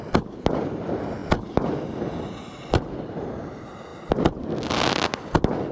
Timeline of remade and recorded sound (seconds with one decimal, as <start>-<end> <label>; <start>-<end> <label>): 0.0-5.7 recorded